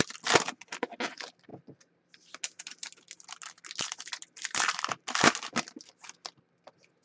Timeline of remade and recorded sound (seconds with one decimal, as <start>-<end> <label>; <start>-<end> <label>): 0.0-7.0 recorded